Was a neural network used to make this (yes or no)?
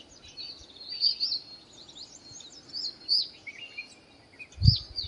no